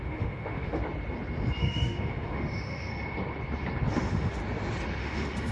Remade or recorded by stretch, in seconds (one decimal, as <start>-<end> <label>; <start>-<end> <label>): 0.0-0.8 remade; 0.8-1.6 recorded; 1.6-2.9 remade; 2.9-3.9 recorded; 3.9-4.4 remade; 4.4-5.0 recorded; 5.0-5.5 remade